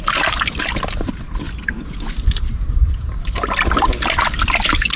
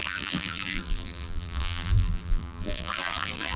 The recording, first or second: first